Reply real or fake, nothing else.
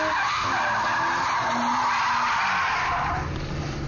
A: real